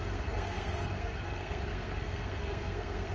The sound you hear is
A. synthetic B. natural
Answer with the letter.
A